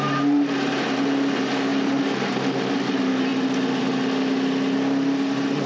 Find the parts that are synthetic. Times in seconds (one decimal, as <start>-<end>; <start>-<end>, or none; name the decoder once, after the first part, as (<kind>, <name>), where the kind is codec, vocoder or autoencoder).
none